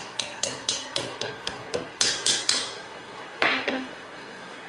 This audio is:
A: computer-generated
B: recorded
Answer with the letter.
A